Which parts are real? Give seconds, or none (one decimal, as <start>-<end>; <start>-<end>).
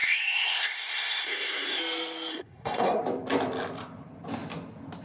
1.8-2.3; 3.0-5.0